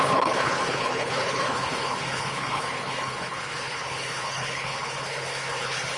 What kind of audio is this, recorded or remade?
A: remade